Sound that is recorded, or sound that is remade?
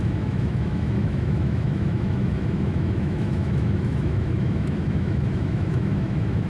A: remade